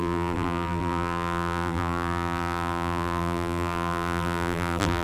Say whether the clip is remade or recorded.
remade